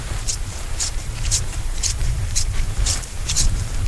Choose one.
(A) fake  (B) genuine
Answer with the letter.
A